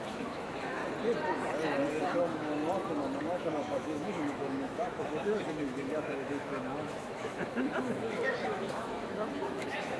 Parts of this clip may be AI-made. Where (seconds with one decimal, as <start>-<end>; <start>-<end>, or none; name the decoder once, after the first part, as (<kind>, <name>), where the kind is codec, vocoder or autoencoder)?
0.0-0.8 (autoencoder, DAC-VAE); 2.0-2.6; 3.2-10.0